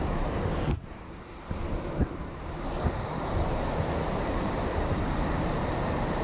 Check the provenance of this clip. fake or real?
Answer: fake